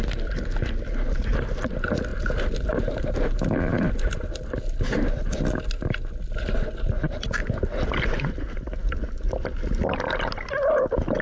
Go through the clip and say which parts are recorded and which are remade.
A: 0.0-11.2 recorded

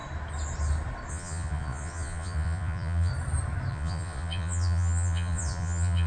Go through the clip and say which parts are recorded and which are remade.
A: 0.0-1.1 recorded; 1.1-3.1 remade; 3.1-3.7 recorded; 3.7-6.1 remade

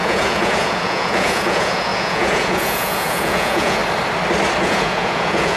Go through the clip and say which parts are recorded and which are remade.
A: 0.0-3.8 remade; 3.8-4.6 recorded; 4.6-5.6 remade

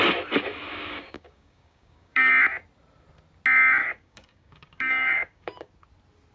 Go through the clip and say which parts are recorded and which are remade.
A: 0.0-0.7 recorded; 0.7-2.3 remade; 2.3-3.8 recorded; 3.8-5.7 remade; 5.7-6.3 recorded

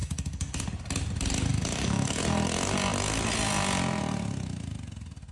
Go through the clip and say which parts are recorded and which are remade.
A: 0.0-0.6 remade; 0.6-1.5 recorded; 1.5-2.2 remade; 2.2-5.3 recorded